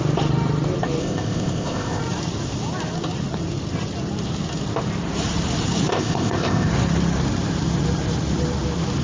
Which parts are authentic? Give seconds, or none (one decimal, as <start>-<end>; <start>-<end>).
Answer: 0.0-1.0; 2.0-5.9; 6.7-9.0